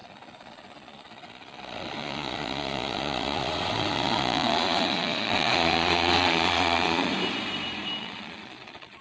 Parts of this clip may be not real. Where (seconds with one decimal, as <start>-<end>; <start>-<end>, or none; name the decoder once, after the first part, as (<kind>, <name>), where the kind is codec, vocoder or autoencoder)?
0.0-7.1 (vocoder, Vocos); 8.0-9.0